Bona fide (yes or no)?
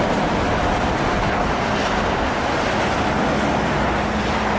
yes